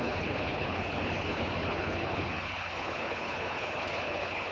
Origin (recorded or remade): remade